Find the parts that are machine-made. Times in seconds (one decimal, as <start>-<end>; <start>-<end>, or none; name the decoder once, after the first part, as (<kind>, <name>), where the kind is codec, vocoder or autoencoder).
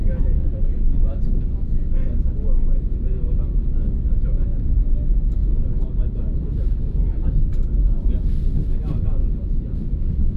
none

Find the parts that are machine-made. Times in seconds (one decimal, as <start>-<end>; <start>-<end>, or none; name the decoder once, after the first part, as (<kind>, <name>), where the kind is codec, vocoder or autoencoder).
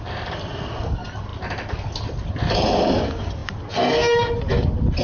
0.0-1.3 (vocoder, BigVGAN v2); 2.5-3.4; 4.4-5.0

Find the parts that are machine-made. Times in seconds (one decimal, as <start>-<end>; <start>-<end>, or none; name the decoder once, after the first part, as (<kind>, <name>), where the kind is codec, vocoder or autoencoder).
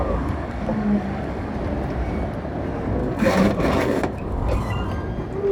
0.0-1.5 (codec, DAC); 3.0-4.9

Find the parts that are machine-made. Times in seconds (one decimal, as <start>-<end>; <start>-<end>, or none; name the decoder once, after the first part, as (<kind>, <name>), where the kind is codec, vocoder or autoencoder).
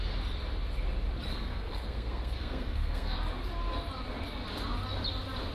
1.3-3.2 (codec, SNAC)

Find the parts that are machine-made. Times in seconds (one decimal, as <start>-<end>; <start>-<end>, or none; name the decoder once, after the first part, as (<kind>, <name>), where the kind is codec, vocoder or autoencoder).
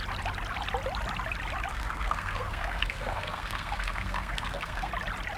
1.7-4.9 (codec, SNAC)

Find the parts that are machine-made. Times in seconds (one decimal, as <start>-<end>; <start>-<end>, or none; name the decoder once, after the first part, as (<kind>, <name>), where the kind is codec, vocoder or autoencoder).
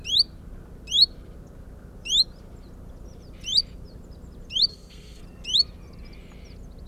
4.7-5.2 (codec, SNAC)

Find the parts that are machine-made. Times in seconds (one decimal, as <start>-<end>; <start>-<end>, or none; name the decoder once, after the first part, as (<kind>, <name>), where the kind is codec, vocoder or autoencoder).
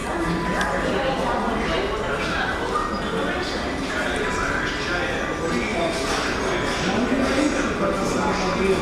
none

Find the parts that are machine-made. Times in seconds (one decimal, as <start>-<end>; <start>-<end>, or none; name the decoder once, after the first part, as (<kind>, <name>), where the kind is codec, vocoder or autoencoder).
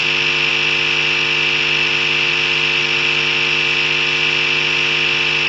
none